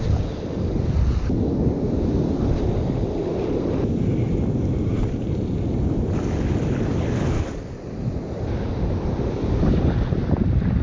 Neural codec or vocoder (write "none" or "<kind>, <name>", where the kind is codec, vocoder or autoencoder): none